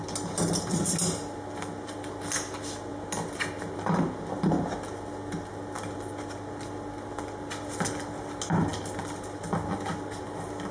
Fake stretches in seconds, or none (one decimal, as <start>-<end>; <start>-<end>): none